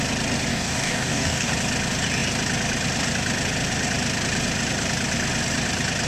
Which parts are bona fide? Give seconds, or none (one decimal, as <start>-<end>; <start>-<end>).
0.0-0.5; 1.5-6.1